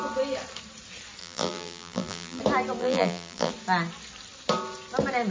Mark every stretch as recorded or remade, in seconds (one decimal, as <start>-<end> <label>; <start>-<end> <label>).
0.0-1.2 recorded; 1.2-2.4 remade; 2.4-2.8 recorded; 2.8-3.5 remade; 3.5-5.3 recorded